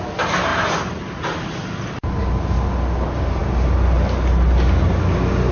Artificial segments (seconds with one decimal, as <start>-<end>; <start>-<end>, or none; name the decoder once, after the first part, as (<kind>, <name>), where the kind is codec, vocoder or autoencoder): none